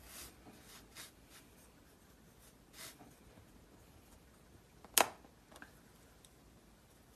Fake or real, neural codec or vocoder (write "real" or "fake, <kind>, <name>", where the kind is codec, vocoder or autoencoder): real